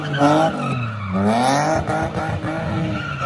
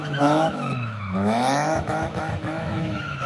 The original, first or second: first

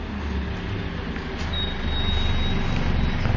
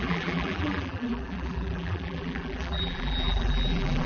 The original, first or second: first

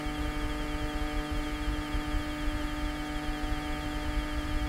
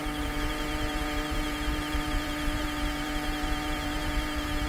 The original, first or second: first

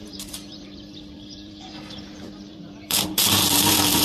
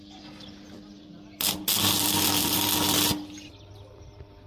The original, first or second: second